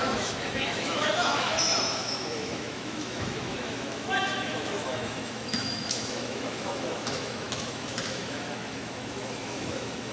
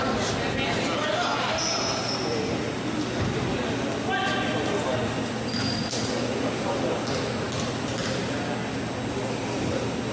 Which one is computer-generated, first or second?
first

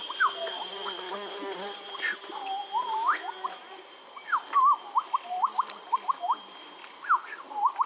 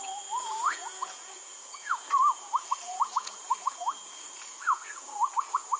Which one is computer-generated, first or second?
second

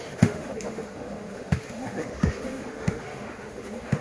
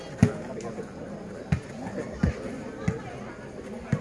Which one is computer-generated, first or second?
first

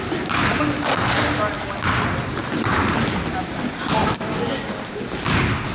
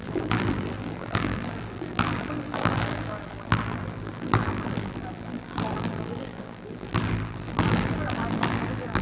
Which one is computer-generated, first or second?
second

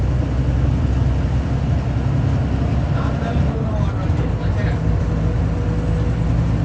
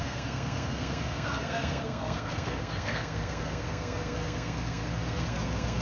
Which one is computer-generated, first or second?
second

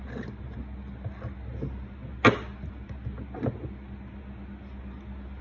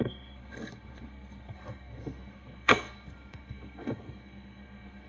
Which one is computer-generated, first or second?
second